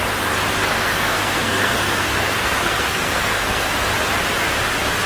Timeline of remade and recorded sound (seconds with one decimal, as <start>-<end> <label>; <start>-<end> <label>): 0.0-0.6 recorded; 0.6-3.7 remade; 3.7-5.1 recorded